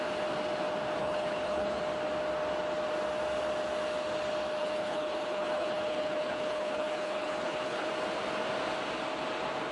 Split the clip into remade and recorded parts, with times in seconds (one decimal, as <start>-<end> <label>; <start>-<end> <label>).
0.0-1.0 recorded; 1.0-1.8 remade; 1.8-4.6 recorded; 4.6-7.9 remade; 7.9-9.7 recorded